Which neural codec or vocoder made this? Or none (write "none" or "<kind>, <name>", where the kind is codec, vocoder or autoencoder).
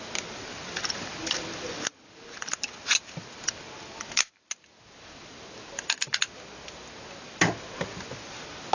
none